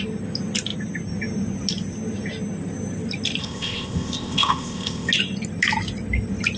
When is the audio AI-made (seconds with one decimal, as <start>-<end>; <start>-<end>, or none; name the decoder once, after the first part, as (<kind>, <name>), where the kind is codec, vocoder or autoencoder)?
3.4-5.1 (codec, ZipCodec)